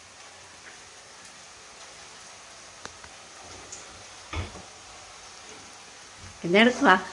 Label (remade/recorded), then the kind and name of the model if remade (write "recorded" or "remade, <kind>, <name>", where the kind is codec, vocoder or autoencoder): recorded